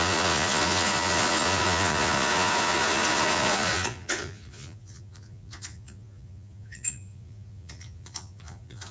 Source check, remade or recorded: remade